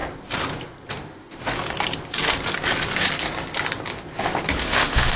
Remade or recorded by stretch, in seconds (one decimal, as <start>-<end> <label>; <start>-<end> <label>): 0.0-0.9 recorded; 0.9-1.5 remade; 1.5-4.6 recorded; 4.6-5.2 remade